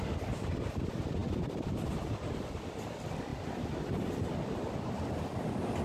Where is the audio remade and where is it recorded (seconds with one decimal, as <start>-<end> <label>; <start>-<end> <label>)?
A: 0.0-5.8 recorded